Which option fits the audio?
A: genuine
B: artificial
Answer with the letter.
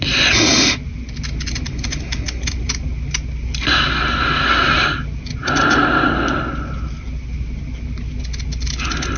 A